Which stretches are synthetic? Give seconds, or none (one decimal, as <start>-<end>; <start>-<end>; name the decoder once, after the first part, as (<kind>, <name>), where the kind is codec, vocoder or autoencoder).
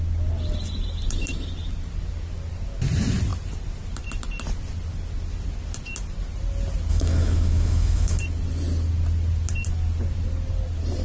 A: 6.9-8.2 (autoencoder, DAC-VAE)